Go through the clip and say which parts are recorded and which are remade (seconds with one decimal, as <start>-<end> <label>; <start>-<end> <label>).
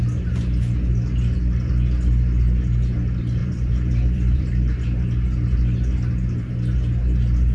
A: 0.0-3.4 recorded; 3.4-4.5 remade; 4.5-7.5 recorded